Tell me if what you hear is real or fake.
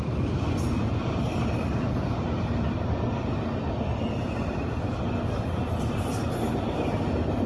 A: real